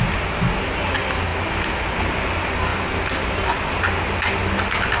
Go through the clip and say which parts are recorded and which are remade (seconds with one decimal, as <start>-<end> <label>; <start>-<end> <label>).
0.0-5.0 recorded